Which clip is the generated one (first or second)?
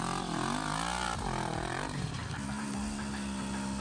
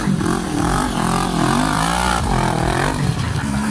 second